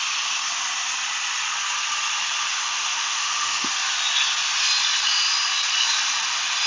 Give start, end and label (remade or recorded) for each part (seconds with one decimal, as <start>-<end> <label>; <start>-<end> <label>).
0.0-2.5 recorded; 2.5-3.7 remade; 3.7-6.7 recorded

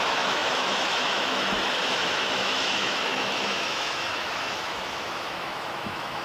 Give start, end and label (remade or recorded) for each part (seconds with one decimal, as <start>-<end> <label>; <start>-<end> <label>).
0.0-6.2 remade

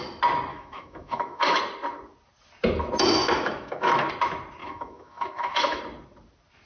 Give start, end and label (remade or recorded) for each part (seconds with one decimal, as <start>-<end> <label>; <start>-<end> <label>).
0.0-0.5 recorded; 0.5-1.6 remade; 1.6-3.2 recorded; 3.2-4.1 remade; 4.1-4.6 recorded; 4.6-5.8 remade; 5.8-6.7 recorded

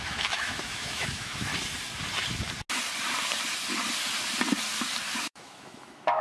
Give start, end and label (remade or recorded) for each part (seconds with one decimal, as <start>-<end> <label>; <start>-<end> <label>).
0.0-1.5 remade; 1.5-5.2 recorded; 5.2-6.2 remade

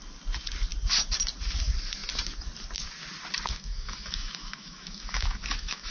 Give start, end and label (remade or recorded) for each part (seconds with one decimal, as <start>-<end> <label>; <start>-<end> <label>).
0.0-3.5 recorded; 3.5-5.9 remade

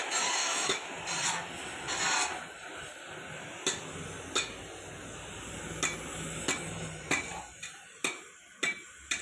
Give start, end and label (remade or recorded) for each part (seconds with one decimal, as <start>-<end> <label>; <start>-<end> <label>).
0.0-0.4 recorded; 0.4-0.9 remade; 0.9-9.2 recorded